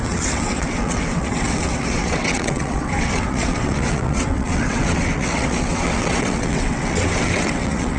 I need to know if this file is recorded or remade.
remade